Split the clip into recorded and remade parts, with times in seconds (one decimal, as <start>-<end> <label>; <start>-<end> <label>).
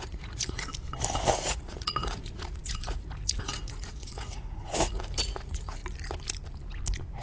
0.0-0.7 remade; 0.7-1.3 recorded; 1.3-5.8 remade; 5.8-7.2 recorded